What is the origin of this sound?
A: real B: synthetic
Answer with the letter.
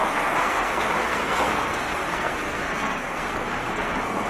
B